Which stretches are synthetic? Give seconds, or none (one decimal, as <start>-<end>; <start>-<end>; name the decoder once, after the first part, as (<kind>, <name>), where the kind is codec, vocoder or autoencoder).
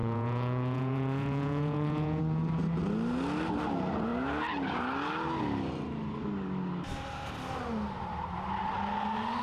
0.0-2.2 (vocoder, Vocos)